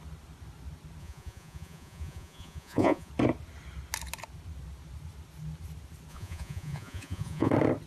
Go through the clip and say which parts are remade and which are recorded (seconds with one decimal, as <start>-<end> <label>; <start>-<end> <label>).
0.0-1.0 recorded; 1.0-3.1 remade; 3.1-6.1 recorded; 6.1-7.5 remade; 7.5-7.9 recorded